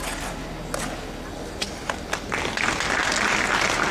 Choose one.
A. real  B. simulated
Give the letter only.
A